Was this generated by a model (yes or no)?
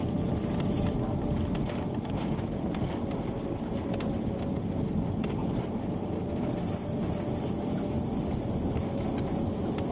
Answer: no